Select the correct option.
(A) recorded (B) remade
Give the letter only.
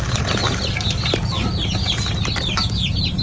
A